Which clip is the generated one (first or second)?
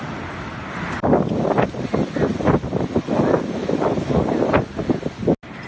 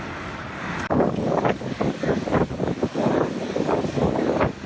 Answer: second